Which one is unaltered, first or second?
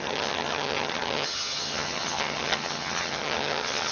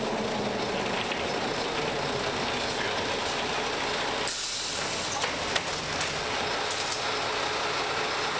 second